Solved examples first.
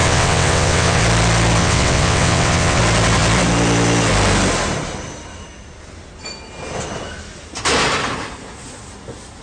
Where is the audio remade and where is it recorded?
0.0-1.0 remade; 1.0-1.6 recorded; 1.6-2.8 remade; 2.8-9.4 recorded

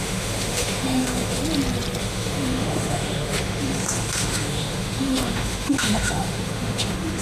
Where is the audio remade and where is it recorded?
0.0-1.4 remade; 1.4-2.0 recorded; 2.0-7.2 remade

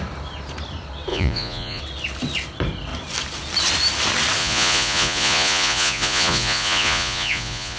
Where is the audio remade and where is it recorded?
0.0-1.1 recorded; 1.1-1.8 remade; 1.8-4.4 recorded; 4.4-7.8 remade

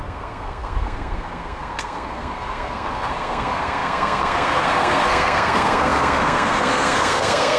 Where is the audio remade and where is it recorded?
0.0-7.6 remade

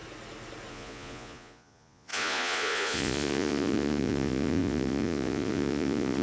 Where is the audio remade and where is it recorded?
0.0-0.7 recorded; 0.7-6.2 remade

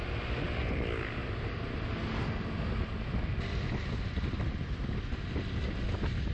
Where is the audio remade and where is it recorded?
0.0-6.3 recorded

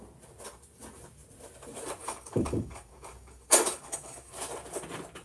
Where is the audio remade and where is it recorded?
0.0-2.0 recorded; 2.0-4.3 remade; 4.3-5.2 recorded

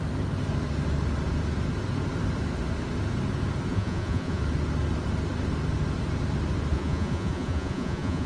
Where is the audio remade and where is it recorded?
0.0-3.7 recorded; 3.7-4.4 remade; 4.4-6.7 recorded; 6.7-8.3 remade